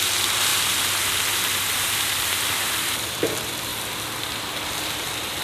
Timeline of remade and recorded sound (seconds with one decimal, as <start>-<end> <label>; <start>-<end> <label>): 0.0-0.5 remade; 0.5-1.9 recorded; 1.9-3.7 remade; 3.7-4.3 recorded; 4.3-5.4 remade